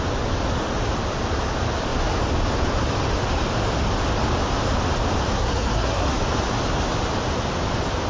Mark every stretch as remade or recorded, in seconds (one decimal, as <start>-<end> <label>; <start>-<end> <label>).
0.0-5.3 recorded; 5.3-6.2 remade; 6.2-8.1 recorded